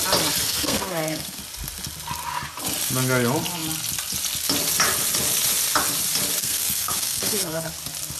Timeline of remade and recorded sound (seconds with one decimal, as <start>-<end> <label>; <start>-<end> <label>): 0.0-0.5 recorded; 0.5-1.4 remade; 1.4-6.4 recorded; 6.4-7.7 remade; 7.7-8.2 recorded